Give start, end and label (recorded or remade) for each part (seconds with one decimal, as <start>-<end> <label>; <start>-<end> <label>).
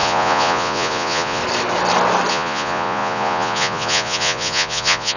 0.0-1.4 remade; 1.4-2.3 recorded; 2.3-5.2 remade